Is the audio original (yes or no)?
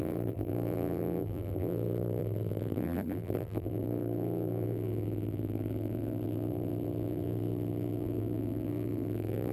no